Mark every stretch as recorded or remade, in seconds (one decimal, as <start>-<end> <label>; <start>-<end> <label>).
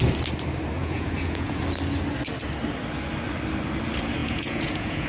0.0-0.8 recorded; 0.8-1.6 remade; 1.6-4.2 recorded; 4.2-5.1 remade